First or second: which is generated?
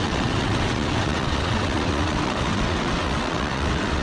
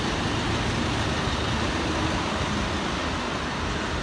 first